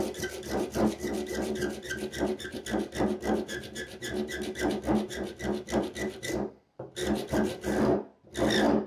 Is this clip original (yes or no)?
yes